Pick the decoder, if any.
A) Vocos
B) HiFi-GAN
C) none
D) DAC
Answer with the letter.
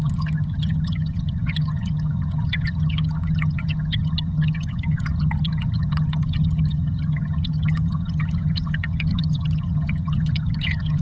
B